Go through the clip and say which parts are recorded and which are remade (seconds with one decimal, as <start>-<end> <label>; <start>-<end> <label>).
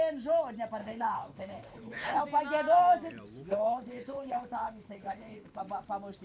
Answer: 0.0-0.8 recorded; 0.8-2.2 remade; 2.2-3.5 recorded; 3.5-5.6 remade; 5.6-6.2 recorded